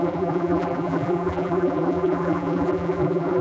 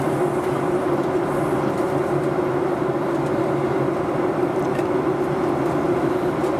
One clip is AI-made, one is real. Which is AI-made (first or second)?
first